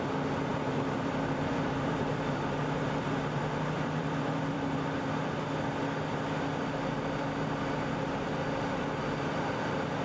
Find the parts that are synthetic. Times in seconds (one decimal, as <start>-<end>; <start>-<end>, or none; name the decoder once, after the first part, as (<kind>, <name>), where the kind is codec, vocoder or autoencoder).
0.5-5.1 (vocoder, BigVGAN v2)